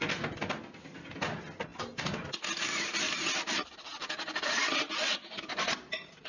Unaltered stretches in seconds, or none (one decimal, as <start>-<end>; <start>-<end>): 0.0-6.3